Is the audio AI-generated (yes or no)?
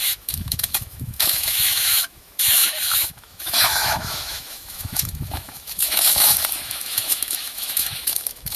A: yes